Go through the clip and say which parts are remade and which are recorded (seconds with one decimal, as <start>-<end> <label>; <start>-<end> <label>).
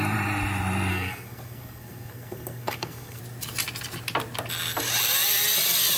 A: 0.0-0.9 recorded; 0.9-3.2 remade; 3.2-6.0 recorded